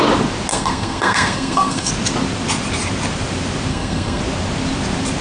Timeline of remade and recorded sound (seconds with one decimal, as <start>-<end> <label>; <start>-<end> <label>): 0.0-0.5 recorded; 0.5-1.9 remade; 1.9-3.7 recorded; 3.7-4.2 remade; 4.2-5.2 recorded